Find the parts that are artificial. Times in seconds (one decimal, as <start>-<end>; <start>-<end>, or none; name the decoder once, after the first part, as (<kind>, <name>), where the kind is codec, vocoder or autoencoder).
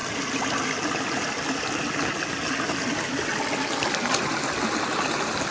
none